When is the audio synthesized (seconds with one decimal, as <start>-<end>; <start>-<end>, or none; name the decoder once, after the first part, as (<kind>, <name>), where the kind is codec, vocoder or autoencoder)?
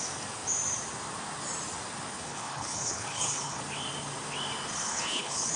2.1-3.6 (codec, HILCodec); 4.7-5.6